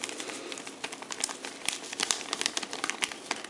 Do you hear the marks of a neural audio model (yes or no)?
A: no